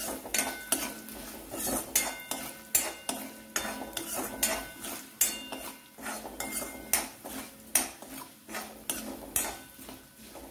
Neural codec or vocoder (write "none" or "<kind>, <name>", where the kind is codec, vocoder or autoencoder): none